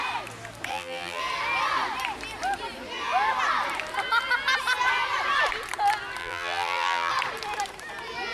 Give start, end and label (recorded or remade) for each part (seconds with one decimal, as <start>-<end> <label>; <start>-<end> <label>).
0.0-0.7 recorded; 0.7-1.2 remade; 1.2-6.2 recorded; 6.2-7.1 remade; 7.1-8.3 recorded